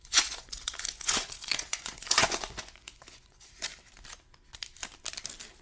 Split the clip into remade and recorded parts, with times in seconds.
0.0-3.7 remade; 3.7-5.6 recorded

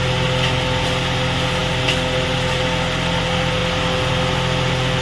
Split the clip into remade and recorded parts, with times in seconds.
0.0-5.0 recorded